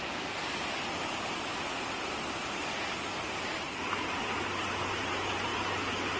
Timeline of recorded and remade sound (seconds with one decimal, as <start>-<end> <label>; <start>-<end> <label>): 0.0-1.7 recorded; 1.7-5.1 remade; 5.1-6.2 recorded